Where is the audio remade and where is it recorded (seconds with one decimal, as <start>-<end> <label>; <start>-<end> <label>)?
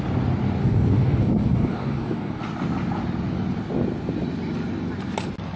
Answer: 0.0-0.6 recorded; 0.6-2.4 remade; 2.4-5.6 recorded